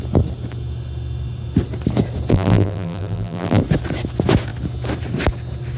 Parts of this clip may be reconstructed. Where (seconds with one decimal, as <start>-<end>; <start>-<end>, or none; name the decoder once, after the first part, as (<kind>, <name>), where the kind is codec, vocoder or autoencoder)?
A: 2.3-3.6 (vocoder, BigVGAN v2)